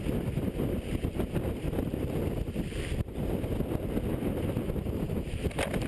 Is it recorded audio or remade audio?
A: recorded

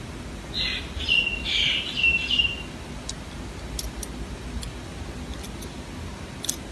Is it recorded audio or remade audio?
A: recorded